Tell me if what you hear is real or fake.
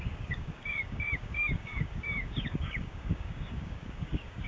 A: fake